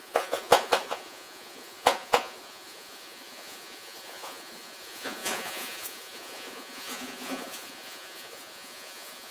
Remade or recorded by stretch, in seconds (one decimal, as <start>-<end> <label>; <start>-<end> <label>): 0.0-9.3 remade